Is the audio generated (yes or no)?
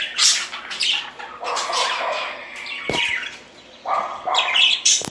no